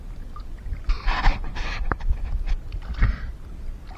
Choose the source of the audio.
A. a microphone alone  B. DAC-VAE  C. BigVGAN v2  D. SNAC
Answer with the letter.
A